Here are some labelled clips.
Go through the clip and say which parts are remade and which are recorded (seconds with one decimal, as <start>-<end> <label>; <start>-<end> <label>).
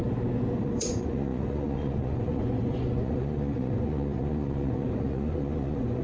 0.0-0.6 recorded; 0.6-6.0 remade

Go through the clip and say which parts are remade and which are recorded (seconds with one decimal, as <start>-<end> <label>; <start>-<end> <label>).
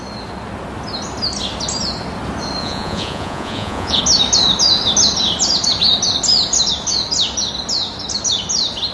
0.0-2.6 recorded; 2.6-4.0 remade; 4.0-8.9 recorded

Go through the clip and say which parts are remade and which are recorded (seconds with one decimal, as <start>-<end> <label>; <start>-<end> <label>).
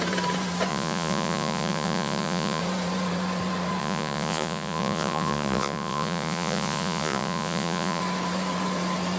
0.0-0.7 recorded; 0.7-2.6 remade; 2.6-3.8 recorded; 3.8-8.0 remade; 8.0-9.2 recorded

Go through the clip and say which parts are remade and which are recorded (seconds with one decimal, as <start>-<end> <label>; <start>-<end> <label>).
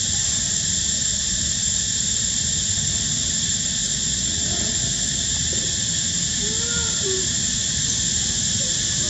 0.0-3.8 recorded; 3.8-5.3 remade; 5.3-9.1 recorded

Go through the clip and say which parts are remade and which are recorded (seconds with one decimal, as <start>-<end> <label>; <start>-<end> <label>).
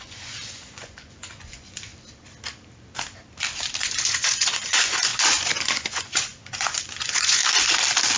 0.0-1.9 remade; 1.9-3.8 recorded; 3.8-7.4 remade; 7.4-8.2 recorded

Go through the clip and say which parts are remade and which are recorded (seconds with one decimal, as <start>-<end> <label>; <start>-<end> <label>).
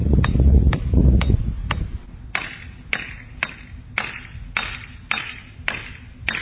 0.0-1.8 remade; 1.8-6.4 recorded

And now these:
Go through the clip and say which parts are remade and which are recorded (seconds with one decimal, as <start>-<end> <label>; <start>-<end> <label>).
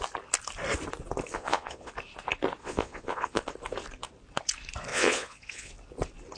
0.0-1.3 recorded; 1.3-1.9 remade; 1.9-2.6 recorded; 2.6-3.5 remade; 3.5-4.9 recorded; 4.9-5.7 remade; 5.7-6.4 recorded